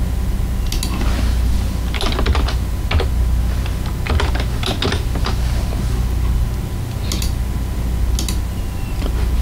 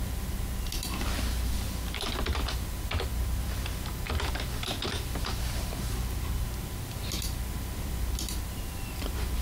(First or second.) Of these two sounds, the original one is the first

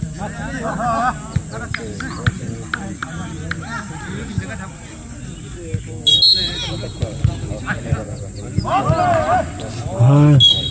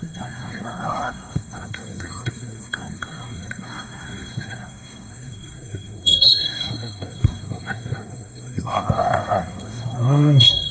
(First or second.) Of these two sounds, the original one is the first